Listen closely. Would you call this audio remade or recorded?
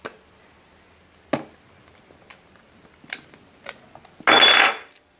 recorded